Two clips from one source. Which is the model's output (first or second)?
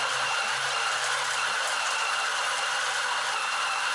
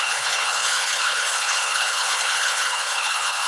second